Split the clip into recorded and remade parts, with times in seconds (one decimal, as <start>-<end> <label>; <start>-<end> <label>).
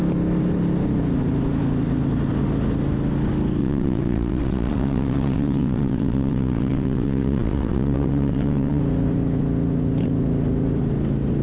0.0-3.6 recorded; 3.6-8.8 remade; 8.8-11.4 recorded